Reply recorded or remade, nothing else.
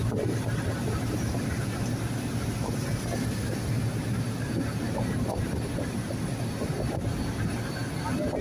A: recorded